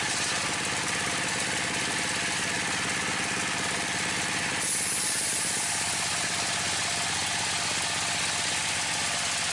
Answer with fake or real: real